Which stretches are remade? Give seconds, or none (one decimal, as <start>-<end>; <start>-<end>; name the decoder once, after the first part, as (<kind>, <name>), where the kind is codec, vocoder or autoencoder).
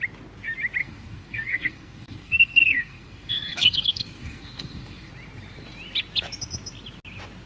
0.8-5.1 (codec, SNAC)